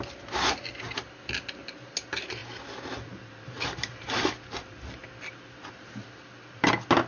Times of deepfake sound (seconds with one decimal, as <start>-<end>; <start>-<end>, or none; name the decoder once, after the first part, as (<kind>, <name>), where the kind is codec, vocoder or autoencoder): none